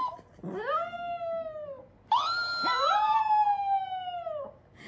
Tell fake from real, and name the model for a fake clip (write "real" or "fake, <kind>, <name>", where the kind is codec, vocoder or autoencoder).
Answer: real